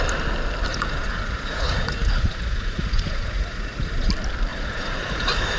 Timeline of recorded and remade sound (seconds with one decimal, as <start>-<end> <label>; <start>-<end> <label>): 0.0-0.7 recorded; 0.7-4.1 remade; 4.1-4.5 recorded; 4.5-5.6 remade